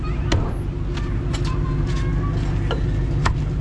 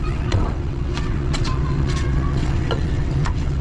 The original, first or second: first